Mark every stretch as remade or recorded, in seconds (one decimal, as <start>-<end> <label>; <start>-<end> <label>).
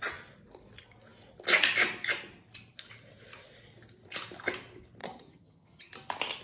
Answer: 0.0-5.0 recorded; 5.0-5.9 remade; 5.9-6.4 recorded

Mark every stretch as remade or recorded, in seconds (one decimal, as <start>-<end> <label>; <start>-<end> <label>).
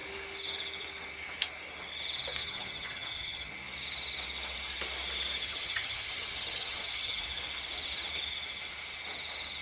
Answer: 0.0-2.4 recorded; 2.4-3.5 remade; 3.5-5.4 recorded; 5.4-7.2 remade; 7.2-9.6 recorded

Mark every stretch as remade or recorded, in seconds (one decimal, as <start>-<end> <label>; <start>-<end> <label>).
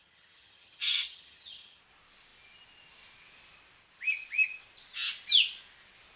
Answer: 0.0-1.8 remade; 1.8-6.2 recorded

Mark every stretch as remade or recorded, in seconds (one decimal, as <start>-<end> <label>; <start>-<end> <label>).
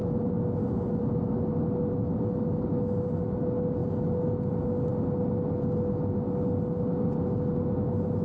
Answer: 0.0-8.2 recorded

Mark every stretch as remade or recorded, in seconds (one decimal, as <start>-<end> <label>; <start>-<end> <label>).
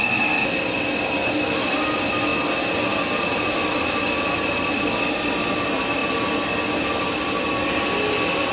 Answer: 0.0-8.5 recorded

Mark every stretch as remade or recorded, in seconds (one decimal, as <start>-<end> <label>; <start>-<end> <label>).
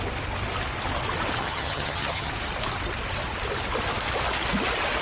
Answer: 0.0-1.4 recorded; 1.4-2.3 remade; 2.3-5.0 recorded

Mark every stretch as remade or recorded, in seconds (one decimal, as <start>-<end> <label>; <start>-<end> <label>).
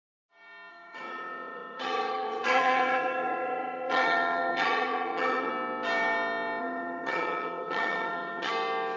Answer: 0.0-0.7 recorded; 0.7-5.5 remade; 5.5-6.6 recorded; 6.6-8.5 remade; 8.5-9.0 recorded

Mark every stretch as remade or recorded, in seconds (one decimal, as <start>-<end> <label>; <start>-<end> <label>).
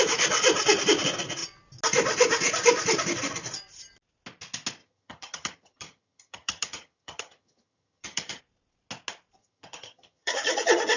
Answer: 0.0-4.8 recorded; 4.8-8.4 remade; 8.4-9.4 recorded; 9.4-11.0 remade